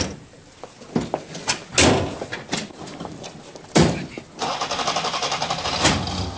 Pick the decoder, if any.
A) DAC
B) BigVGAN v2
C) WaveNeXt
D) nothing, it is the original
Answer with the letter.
D